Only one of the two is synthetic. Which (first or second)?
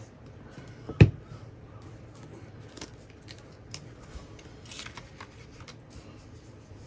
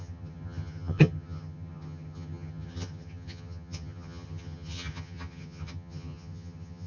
second